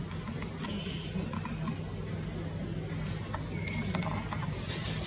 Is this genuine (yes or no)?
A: yes